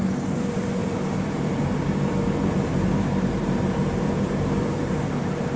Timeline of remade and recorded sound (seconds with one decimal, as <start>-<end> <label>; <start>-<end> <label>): 0.0-5.6 remade